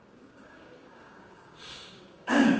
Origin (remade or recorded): remade